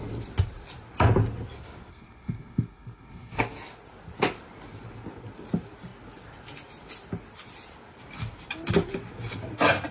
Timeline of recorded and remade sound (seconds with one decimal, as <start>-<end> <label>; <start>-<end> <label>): 0.0-1.9 recorded; 1.9-3.4 remade; 3.4-9.9 recorded